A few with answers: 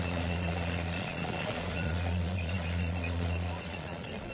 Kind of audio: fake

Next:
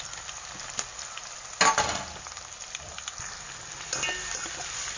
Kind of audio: real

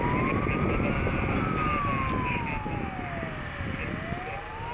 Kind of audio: real